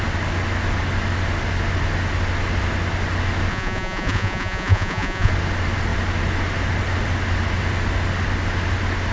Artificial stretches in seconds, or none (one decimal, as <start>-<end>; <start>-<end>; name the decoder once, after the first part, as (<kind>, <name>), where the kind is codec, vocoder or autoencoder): 3.5-5.3 (vocoder, Vocos)